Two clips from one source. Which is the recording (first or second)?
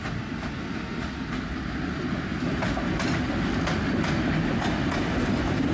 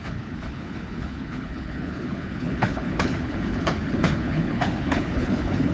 first